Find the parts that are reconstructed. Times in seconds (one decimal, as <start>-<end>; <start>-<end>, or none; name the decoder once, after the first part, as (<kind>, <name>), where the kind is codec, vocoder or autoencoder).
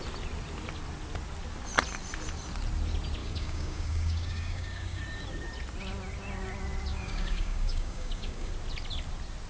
3.2-5.0 (codec, DAC); 6.9-8.5